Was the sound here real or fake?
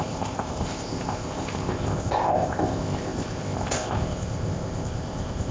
fake